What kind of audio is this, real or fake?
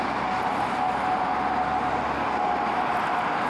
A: real